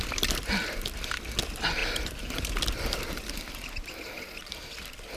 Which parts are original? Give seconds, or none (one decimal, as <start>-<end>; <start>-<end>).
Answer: 0.0-1.8; 3.2-5.2